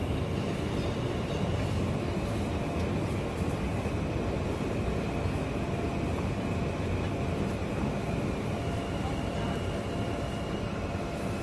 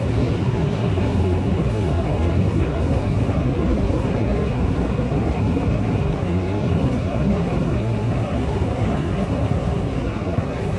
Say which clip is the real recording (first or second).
first